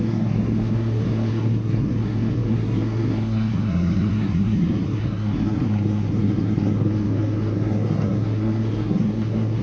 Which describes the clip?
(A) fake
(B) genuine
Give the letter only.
A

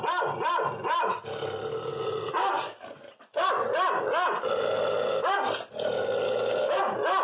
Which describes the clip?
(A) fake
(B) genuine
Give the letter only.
B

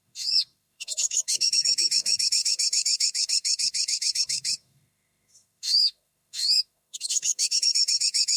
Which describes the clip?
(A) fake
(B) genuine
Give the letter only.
A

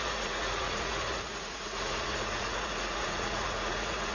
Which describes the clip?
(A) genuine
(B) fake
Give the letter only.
B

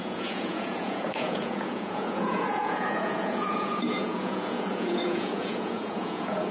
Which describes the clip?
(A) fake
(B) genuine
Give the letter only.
A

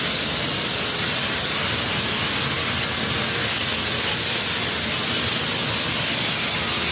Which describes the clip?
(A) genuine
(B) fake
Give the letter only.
A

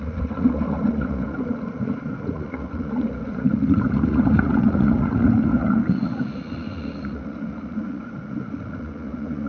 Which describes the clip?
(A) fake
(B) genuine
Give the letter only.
A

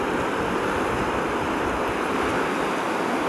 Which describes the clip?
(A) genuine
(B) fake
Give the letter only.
A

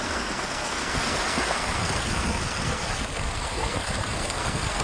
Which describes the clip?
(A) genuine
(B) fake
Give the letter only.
B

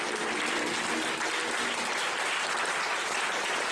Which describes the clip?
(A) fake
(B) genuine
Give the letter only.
B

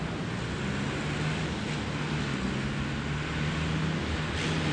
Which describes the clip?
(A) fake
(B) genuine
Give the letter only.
B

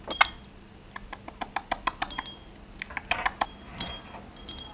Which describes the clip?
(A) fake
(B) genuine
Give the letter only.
B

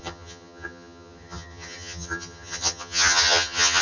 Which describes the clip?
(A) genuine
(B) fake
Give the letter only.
B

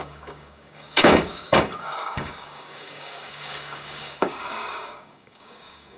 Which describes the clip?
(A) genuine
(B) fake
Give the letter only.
B